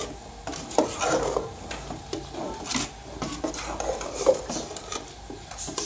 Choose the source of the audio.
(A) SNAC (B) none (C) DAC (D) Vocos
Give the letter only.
B